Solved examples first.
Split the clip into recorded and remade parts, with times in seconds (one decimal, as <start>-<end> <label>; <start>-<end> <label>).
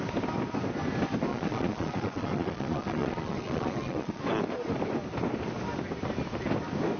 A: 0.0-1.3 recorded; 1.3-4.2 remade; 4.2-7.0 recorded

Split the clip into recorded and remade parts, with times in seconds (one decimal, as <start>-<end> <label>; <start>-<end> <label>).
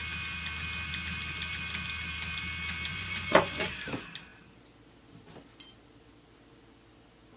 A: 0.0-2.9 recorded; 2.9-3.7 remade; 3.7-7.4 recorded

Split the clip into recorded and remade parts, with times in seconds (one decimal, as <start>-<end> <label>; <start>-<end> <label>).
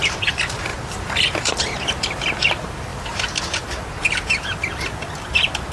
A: 0.0-0.7 recorded; 0.7-1.8 remade; 1.8-2.9 recorded; 2.9-3.6 remade; 3.6-5.7 recorded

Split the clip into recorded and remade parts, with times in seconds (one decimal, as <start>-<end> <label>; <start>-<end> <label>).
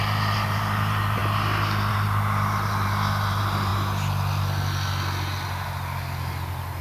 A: 0.0-1.2 remade; 1.2-1.9 recorded; 1.9-3.7 remade; 3.7-6.8 recorded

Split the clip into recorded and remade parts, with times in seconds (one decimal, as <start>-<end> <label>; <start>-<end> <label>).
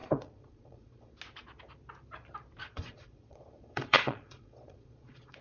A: 0.0-1.1 remade; 1.1-2.6 recorded; 2.6-5.4 remade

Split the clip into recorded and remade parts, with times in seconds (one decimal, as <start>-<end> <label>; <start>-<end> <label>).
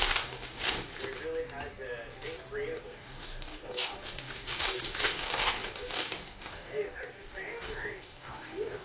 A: 0.0-0.9 remade; 0.9-2.8 recorded; 2.8-8.8 remade